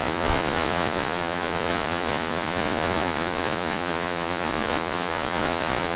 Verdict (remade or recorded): remade